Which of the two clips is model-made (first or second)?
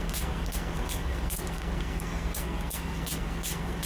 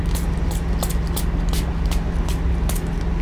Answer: first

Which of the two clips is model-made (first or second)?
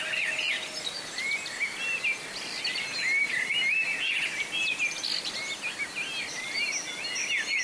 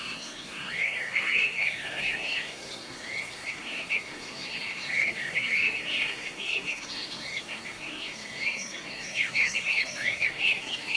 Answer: second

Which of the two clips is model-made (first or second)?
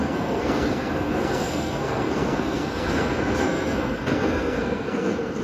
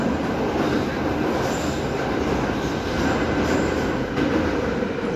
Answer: first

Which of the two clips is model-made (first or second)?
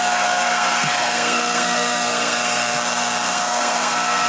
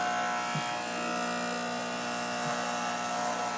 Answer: first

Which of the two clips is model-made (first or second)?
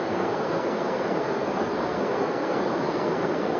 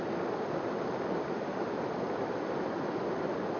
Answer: first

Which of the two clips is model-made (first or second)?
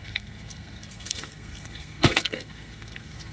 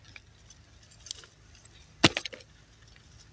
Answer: first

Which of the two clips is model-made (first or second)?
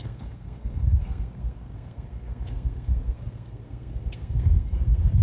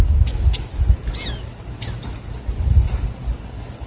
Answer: first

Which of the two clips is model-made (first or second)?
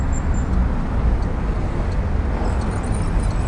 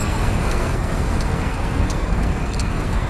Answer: second